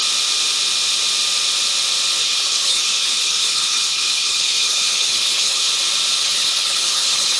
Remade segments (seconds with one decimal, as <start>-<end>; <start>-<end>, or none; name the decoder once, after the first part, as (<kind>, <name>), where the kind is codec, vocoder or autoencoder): 2.2-5.7 (codec, HILCodec); 6.2-7.4